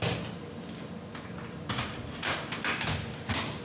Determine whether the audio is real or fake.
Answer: real